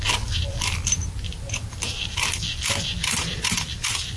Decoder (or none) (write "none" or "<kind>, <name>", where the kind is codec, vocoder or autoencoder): vocoder, BigVGAN v2